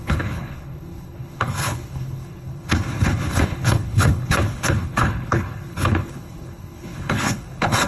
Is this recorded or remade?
remade